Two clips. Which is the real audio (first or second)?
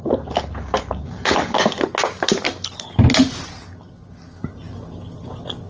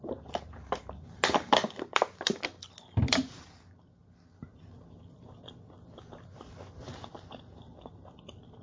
first